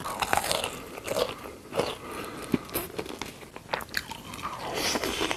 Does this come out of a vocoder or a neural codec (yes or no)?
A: no